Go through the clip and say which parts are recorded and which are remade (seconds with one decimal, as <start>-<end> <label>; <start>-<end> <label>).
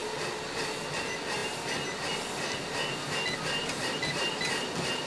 0.0-5.1 recorded